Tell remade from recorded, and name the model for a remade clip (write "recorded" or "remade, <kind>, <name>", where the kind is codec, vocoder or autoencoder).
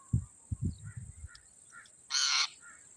recorded